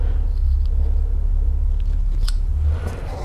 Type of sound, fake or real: real